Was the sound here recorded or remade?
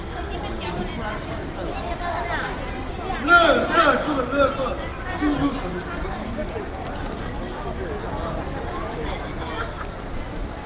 recorded